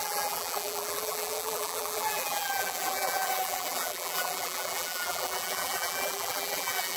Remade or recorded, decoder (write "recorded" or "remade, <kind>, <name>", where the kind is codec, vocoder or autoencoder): remade, vocoder, BigVGAN v2